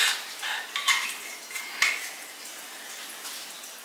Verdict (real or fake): real